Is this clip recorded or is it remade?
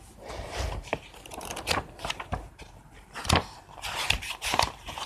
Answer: remade